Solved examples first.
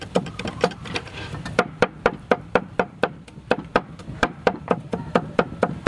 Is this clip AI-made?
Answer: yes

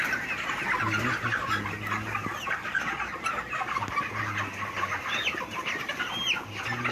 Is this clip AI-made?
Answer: no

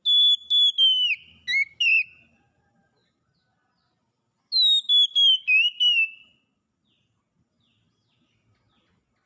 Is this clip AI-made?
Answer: no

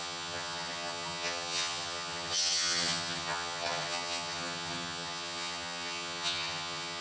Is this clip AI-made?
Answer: yes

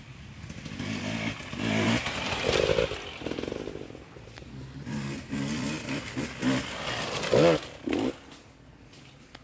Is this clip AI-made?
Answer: no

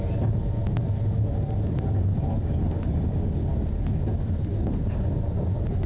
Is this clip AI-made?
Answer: no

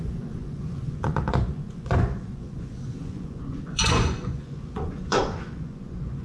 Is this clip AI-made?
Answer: yes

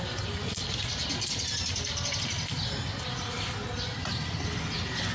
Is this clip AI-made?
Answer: no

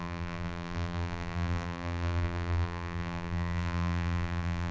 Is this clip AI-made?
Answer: yes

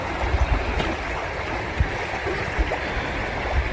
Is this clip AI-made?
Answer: yes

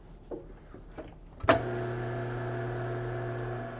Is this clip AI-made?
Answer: no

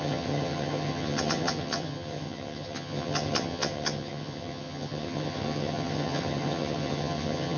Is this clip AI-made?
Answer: yes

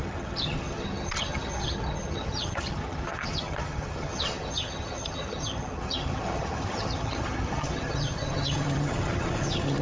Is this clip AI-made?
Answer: yes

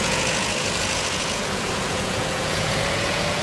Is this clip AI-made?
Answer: yes